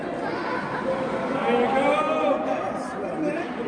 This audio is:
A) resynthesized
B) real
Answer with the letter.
B